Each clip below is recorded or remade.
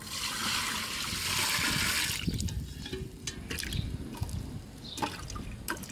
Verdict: recorded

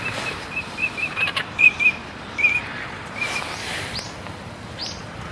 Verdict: remade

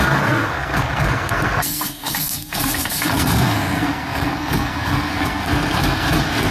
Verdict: remade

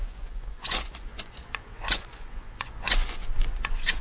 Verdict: remade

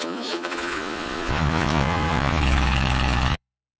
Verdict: remade